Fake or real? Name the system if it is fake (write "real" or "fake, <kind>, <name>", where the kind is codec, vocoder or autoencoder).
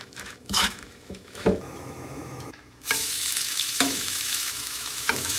fake, autoencoder, DAC-VAE